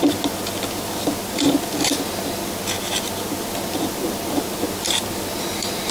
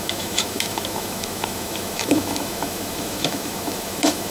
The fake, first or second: second